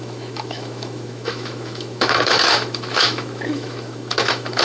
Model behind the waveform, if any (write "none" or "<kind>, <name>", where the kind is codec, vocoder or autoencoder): autoencoder, DAC-VAE